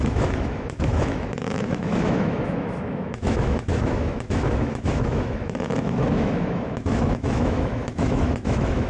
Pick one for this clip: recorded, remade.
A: remade